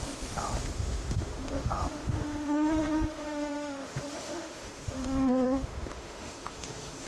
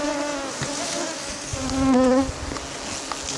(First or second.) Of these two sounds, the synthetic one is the first